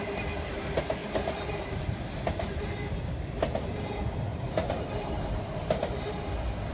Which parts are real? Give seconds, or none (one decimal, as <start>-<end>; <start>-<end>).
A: 0.0-1.0; 3.8-4.3; 5.1-6.7